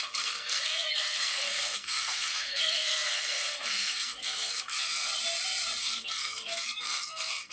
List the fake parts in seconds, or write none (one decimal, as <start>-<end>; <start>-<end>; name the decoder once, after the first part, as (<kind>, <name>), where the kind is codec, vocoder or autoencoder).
0.0-5.1 (codec, SNAC); 5.8-7.5